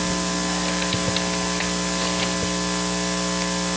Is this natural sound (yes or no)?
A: yes